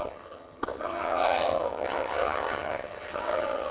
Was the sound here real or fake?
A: fake